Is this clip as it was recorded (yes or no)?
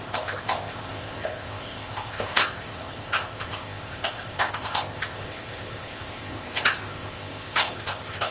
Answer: no